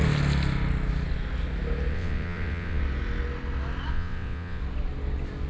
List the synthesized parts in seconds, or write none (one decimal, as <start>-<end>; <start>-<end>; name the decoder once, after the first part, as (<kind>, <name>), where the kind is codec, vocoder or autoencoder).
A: 1.9-2.8 (vocoder, WaveNeXt); 3.9-4.6